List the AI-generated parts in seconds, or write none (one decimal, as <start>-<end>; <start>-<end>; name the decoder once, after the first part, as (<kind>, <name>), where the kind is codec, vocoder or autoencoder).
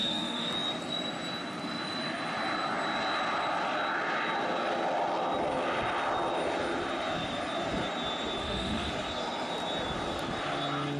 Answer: 0.0-0.5 (autoencoder, DAC-VAE); 8.4-8.9